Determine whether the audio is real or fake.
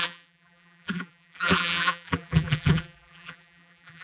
fake